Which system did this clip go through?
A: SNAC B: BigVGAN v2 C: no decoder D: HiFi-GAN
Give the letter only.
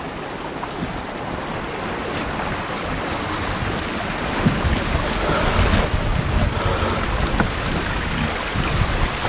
C